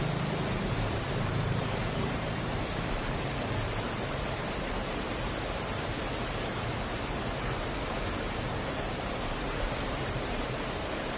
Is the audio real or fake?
fake